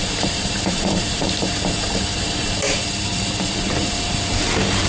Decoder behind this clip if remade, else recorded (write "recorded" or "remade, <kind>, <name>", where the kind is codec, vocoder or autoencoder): remade, vocoder, BigVGAN v2